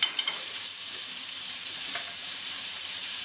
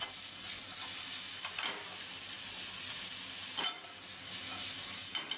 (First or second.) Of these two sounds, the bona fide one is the second